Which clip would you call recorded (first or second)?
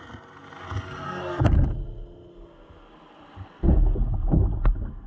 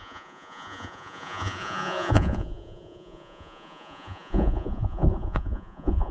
first